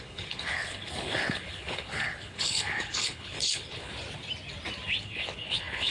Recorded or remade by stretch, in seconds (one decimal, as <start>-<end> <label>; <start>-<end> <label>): 0.0-3.9 remade; 3.9-5.0 recorded; 5.0-5.9 remade